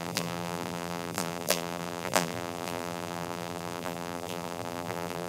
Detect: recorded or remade remade